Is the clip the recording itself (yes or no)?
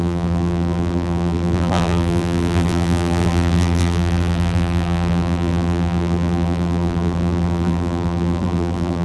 no